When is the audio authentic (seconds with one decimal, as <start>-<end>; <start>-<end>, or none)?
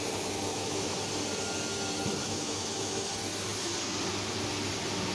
0.0-0.5; 1.0-2.2; 3.1-5.1